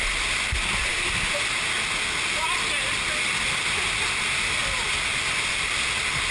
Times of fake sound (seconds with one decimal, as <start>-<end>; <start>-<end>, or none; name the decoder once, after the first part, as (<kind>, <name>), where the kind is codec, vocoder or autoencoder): none